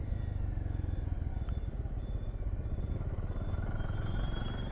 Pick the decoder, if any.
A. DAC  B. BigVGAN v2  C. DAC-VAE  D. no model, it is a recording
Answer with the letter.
D